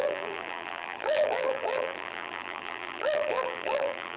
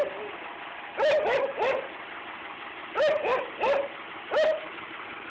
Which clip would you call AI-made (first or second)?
first